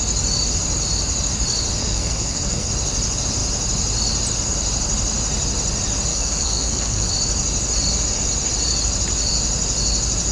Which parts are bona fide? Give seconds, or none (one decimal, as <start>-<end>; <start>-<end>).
0.0-1.8; 2.7-6.1; 7.1-10.3